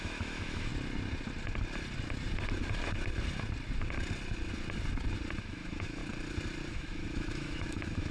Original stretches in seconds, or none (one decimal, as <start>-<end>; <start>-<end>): 0.7-5.4; 6.0-6.7